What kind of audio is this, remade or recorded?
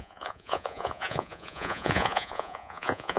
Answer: remade